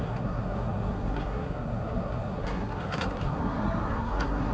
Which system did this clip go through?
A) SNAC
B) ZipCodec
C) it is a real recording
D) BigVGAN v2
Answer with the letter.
A